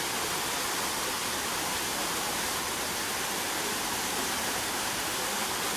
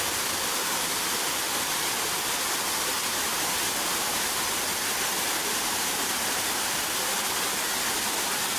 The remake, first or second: second